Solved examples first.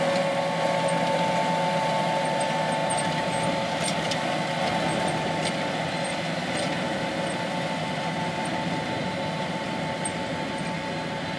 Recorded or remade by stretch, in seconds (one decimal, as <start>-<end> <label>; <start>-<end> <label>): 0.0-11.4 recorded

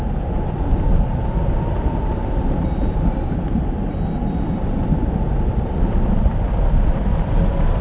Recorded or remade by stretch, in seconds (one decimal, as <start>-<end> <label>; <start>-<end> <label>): 0.0-7.8 recorded

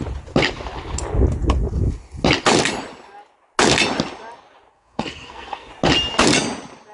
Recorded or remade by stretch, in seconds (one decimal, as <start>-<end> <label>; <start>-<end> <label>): 0.0-4.7 recorded; 4.7-5.7 remade; 5.7-6.9 recorded

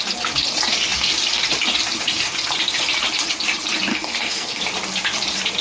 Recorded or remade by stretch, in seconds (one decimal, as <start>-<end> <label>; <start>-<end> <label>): 0.0-3.9 recorded; 3.9-4.6 remade; 4.6-5.6 recorded